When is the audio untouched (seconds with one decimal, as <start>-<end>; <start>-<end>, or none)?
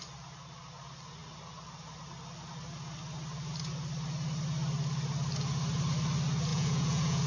0.0-6.5